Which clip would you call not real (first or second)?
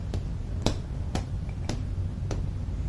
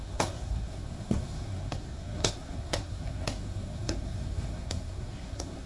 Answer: second